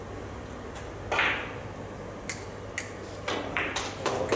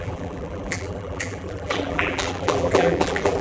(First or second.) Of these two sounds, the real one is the first